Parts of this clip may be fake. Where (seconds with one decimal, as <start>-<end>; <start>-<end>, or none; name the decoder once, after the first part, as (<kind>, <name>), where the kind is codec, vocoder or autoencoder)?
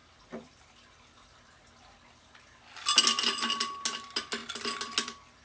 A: none